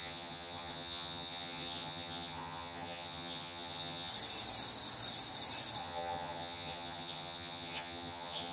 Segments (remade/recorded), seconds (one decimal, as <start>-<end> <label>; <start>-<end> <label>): 0.0-4.1 remade; 4.1-5.8 recorded; 5.8-8.5 remade

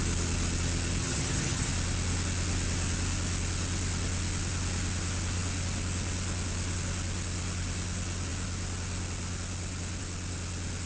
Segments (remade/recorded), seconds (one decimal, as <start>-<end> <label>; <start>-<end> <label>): 0.0-1.0 recorded; 1.0-1.7 remade; 1.7-10.9 recorded

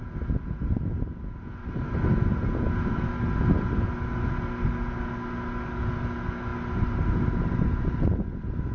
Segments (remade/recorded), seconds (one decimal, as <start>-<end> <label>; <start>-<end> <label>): 0.0-8.7 recorded

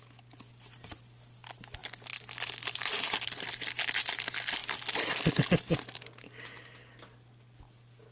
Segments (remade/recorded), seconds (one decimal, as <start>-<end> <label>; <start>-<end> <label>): 0.0-8.1 recorded

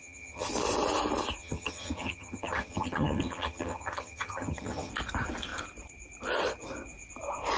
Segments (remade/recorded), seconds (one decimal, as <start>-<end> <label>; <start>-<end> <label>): 0.0-0.5 remade; 0.5-1.4 recorded; 1.4-4.9 remade; 4.9-7.6 recorded

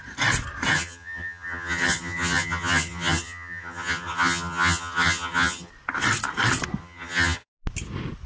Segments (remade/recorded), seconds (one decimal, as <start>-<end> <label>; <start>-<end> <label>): 0.0-0.7 recorded; 0.7-5.7 remade; 5.7-6.8 recorded; 6.8-7.4 remade; 7.4-8.3 recorded